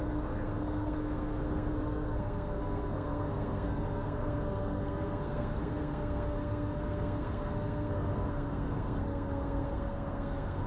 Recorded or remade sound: remade